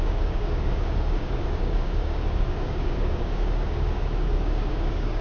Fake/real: fake